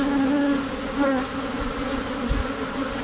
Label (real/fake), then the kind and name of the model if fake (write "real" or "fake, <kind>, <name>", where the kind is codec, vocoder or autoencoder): real